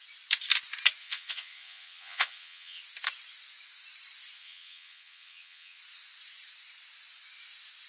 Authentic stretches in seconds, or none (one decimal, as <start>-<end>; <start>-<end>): 0.0-1.0; 2.8-4.4; 5.8-7.9